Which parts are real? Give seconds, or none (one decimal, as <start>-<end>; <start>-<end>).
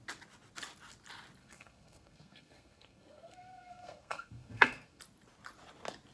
0.0-1.4; 5.0-6.1